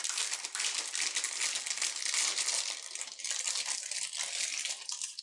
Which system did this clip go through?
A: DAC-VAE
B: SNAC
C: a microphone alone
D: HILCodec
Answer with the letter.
C